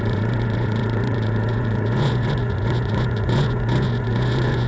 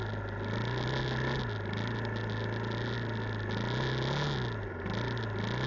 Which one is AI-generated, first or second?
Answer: first